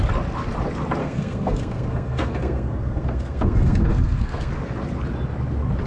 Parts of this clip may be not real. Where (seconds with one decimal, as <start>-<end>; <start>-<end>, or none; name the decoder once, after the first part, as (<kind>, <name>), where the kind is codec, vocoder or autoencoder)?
1.0-4.5 (codec, SNAC)